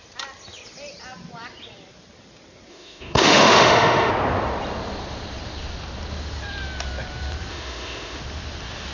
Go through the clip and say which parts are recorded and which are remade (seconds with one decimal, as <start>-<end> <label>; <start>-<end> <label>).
0.0-2.7 recorded; 2.7-4.1 remade; 4.1-7.5 recorded; 7.5-8.2 remade; 8.2-8.9 recorded